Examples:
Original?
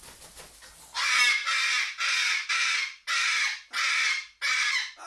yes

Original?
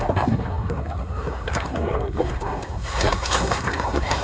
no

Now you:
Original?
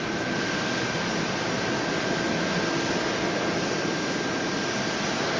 yes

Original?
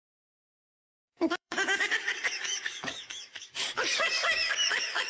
no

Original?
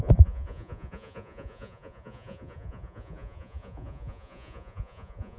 no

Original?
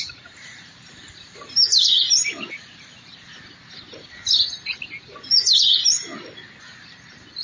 no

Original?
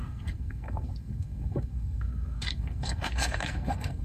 no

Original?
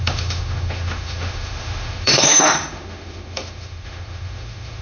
no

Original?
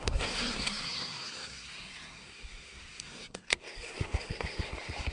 no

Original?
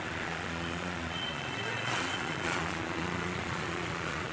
no